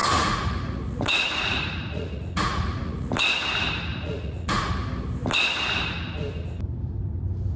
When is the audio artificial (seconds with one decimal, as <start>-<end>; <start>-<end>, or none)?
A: 0.0-3.1; 3.9-4.7